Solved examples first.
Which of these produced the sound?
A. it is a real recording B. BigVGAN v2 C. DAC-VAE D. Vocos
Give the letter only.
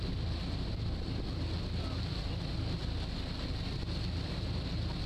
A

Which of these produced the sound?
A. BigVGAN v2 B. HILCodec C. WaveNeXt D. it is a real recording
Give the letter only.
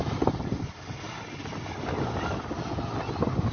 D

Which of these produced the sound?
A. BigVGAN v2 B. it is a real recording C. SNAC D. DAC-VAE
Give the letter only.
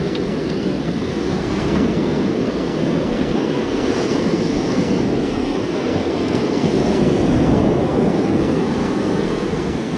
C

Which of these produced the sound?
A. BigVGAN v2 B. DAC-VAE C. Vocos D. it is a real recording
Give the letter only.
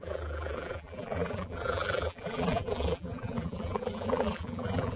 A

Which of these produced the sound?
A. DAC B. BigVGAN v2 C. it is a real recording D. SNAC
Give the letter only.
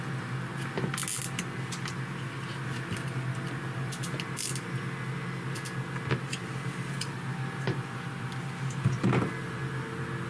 C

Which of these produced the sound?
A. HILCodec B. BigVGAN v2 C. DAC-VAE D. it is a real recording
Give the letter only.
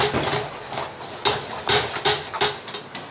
D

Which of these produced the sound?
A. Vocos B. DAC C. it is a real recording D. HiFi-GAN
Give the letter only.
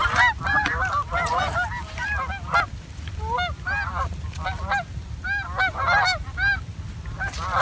C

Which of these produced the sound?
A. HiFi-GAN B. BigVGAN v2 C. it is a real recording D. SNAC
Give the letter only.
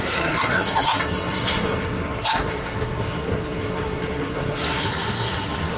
D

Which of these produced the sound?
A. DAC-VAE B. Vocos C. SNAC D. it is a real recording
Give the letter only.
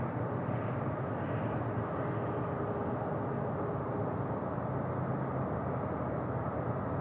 D